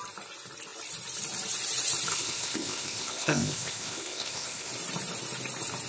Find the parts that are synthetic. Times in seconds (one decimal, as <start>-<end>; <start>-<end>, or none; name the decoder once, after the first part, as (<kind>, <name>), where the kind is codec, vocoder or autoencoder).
2.1-4.7 (codec, ZipCodec)